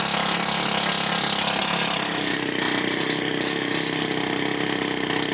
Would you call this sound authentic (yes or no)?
yes